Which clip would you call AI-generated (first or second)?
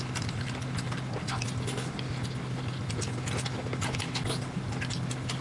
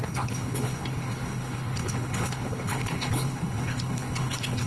second